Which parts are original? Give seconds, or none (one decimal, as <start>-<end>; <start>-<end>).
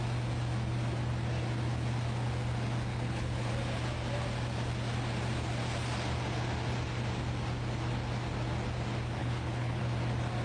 0.0-2.9; 3.5-9.2; 9.8-10.4